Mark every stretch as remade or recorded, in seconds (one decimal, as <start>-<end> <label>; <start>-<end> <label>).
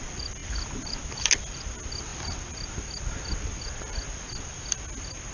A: 0.0-5.3 recorded